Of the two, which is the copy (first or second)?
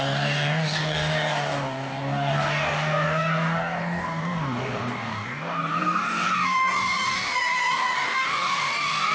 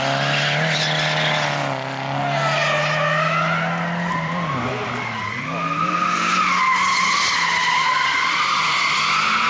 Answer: first